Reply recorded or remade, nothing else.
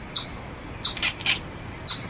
remade